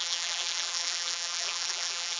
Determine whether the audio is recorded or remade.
remade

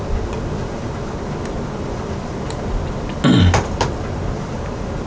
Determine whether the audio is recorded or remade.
recorded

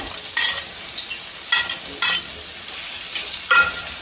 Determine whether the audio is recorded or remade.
recorded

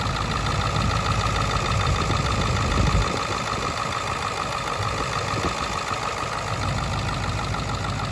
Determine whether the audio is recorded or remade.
recorded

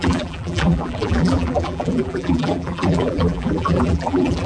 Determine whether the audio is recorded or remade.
remade